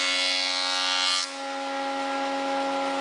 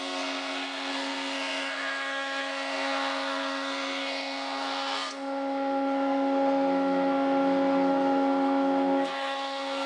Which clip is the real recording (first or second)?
first